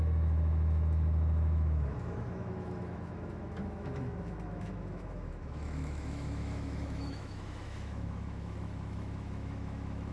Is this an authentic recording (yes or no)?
no